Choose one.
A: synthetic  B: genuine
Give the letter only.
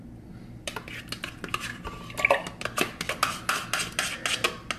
B